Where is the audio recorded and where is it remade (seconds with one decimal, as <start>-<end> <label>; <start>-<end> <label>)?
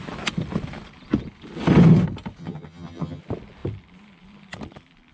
0.0-2.4 recorded; 2.4-3.2 remade; 3.2-5.1 recorded